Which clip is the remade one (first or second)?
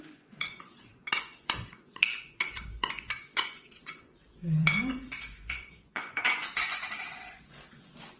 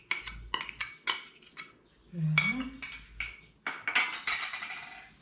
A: first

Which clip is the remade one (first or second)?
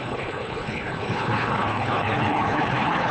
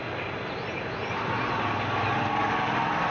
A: first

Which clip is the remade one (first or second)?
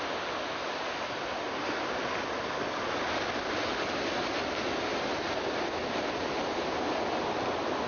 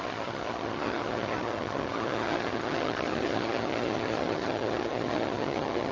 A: second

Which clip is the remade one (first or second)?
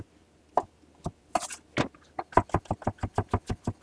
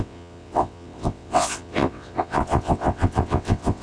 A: second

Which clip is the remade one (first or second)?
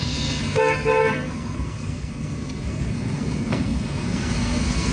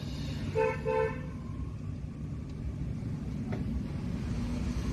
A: first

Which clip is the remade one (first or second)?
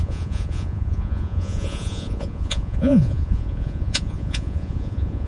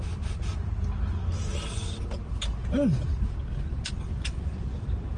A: first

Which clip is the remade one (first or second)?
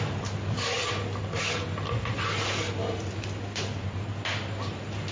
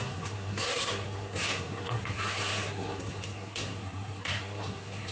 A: second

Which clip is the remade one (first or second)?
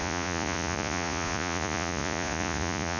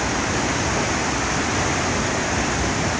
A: first